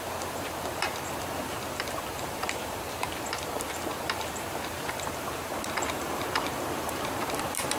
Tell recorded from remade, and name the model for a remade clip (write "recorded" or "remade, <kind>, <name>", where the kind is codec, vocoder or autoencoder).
remade, vocoder, BigVGAN v2